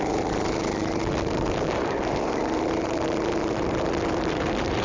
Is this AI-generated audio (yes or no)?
yes